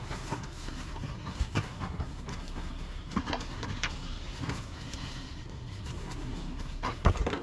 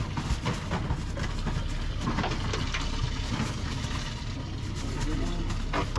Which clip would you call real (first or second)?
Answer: second